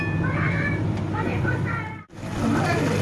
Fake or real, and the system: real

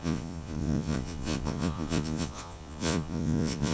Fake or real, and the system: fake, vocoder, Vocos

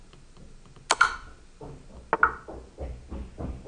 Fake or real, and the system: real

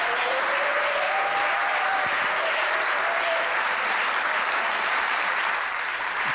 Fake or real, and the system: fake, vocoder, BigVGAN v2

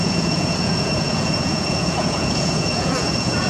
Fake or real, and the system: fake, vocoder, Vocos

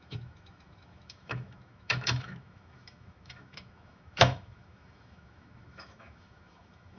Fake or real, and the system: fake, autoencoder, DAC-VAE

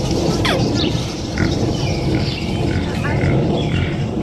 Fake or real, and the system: fake, vocoder, BigVGAN v2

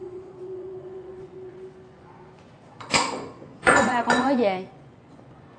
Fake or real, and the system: fake, vocoder, Vocos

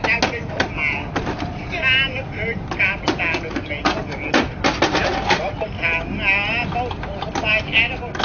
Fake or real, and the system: real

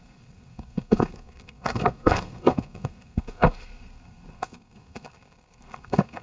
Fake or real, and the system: fake, codec, SNAC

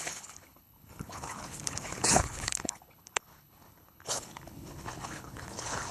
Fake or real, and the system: fake, codec, HILCodec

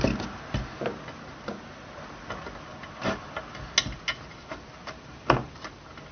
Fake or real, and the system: real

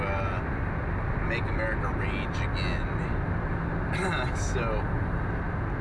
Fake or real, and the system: real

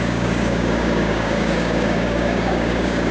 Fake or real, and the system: fake, codec, DAC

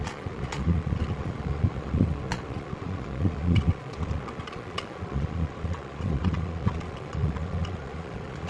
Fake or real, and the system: fake, vocoder, Vocos